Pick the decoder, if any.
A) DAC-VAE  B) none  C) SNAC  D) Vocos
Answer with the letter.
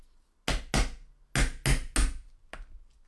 B